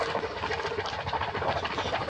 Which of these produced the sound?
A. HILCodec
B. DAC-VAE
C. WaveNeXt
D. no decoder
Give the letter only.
D